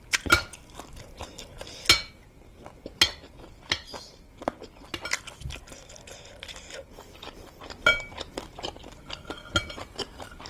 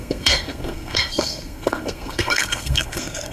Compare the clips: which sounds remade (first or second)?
second